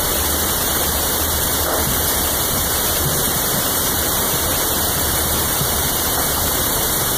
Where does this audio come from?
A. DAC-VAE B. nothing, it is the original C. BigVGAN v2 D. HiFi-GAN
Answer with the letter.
C